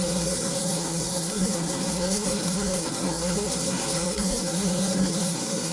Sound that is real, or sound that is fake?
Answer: fake